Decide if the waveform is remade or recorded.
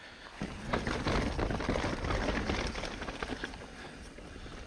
recorded